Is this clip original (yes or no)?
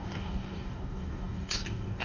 no